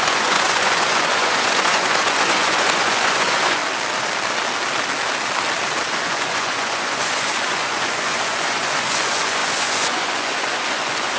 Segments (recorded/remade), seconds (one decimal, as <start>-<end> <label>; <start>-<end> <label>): 0.0-3.6 remade; 3.6-5.9 recorded; 5.9-11.2 remade